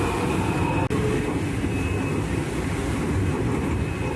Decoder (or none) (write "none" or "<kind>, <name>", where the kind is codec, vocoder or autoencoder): none